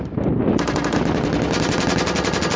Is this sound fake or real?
real